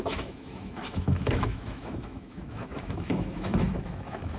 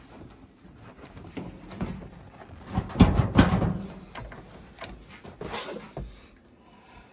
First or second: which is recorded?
second